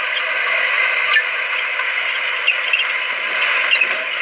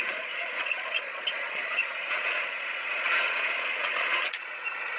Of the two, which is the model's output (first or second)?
second